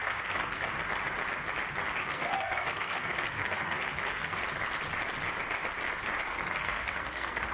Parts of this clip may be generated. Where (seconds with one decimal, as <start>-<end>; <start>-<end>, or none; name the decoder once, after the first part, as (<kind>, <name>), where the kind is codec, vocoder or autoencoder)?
0.0-0.7 (codec, SNAC); 2.0-4.4; 6.3-7.5